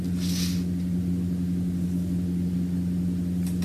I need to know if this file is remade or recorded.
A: recorded